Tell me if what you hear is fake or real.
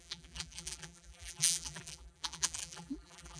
fake